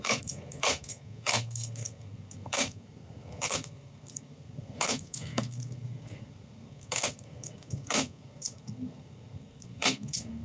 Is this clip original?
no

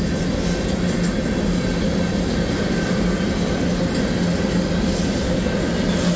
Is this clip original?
yes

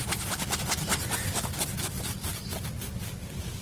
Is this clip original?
yes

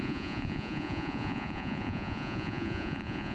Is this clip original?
no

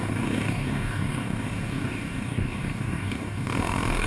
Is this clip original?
no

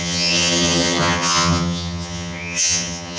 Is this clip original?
no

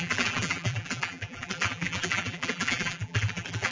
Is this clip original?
no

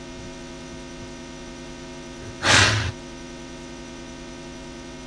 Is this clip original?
no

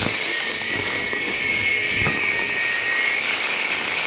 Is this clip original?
no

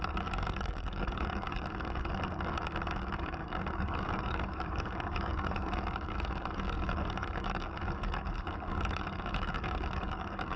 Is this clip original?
no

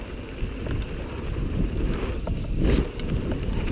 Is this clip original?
no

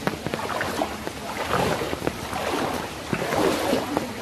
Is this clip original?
yes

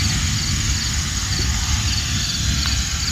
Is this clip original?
yes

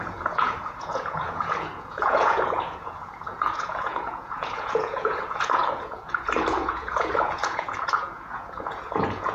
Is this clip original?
no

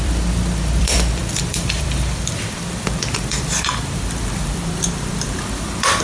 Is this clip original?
no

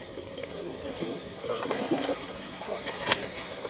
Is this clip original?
no